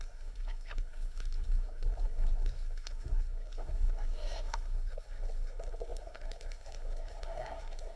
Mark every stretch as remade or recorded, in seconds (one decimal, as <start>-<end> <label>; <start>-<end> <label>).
0.0-8.0 remade